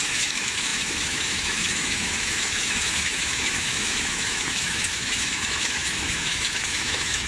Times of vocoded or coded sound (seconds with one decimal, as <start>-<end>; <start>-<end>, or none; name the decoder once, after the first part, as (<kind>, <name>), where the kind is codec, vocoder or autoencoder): 0.0-7.3 (autoencoder, DAC-VAE)